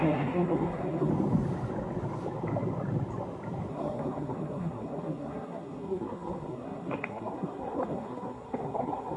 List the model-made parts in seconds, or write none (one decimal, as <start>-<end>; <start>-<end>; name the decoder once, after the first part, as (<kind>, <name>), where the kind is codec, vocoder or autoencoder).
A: 0.0-1.1 (codec, SNAC); 3.7-9.2